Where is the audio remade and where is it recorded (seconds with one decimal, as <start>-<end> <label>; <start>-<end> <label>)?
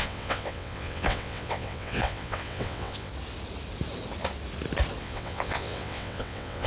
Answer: 0.0-3.1 remade; 3.1-5.0 recorded; 5.0-6.7 remade